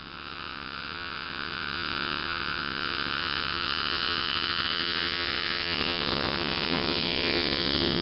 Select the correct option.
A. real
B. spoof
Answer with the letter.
B